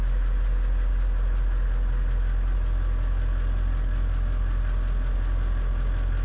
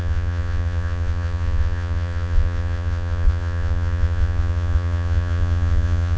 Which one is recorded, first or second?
first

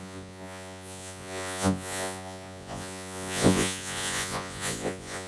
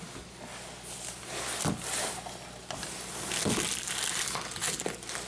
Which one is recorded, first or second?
second